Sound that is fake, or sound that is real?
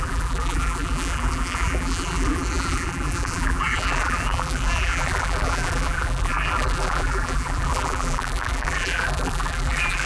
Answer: fake